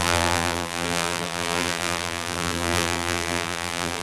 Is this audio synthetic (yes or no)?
yes